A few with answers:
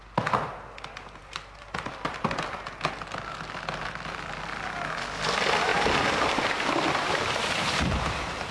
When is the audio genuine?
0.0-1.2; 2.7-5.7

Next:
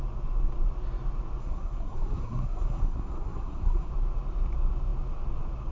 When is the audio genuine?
0.0-1.4; 3.9-5.7

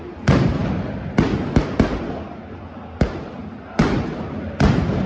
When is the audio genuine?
0.0-5.1

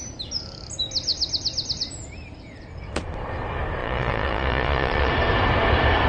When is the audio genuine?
0.0-3.8; 5.1-6.1

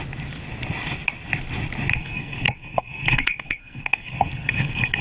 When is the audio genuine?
0.0-1.9

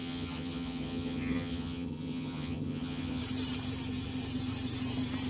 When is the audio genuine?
3.2-5.3

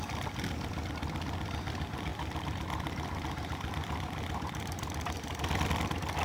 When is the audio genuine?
0.0-6.2